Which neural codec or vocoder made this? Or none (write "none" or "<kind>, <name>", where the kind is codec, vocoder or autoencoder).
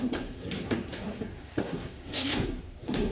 codec, SNAC